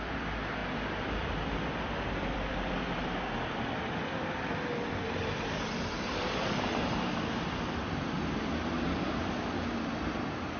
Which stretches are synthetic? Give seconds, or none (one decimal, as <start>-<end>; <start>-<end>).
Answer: 0.0-10.6